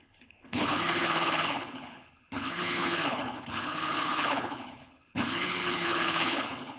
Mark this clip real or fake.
fake